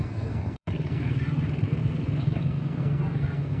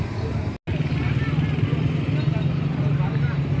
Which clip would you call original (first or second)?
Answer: second